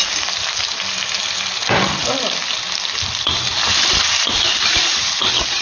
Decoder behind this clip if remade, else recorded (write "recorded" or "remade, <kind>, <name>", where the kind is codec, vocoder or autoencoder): recorded